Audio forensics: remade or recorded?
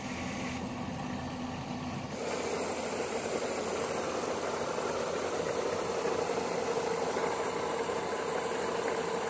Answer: recorded